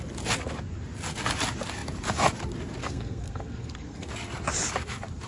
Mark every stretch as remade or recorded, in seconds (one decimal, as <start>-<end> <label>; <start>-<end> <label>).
0.0-2.8 recorded; 2.8-4.1 remade; 4.1-5.3 recorded